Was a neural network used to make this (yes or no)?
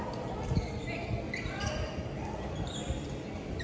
no